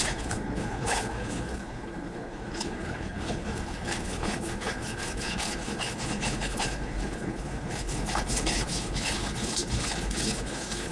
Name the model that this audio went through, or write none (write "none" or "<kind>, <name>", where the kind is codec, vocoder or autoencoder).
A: codec, HILCodec